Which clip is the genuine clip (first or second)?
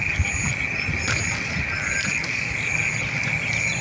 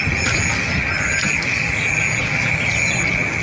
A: second